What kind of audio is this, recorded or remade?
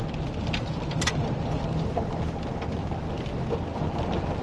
recorded